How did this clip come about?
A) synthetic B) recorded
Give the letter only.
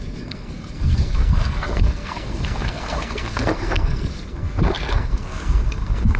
A